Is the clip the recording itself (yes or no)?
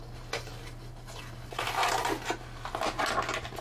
yes